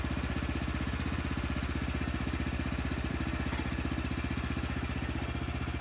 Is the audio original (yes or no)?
yes